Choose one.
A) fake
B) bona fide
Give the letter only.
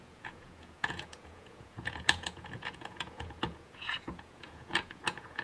A